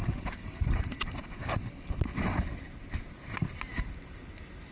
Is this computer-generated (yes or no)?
no